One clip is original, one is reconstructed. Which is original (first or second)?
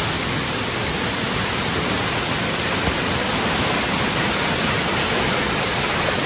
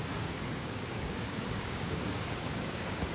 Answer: first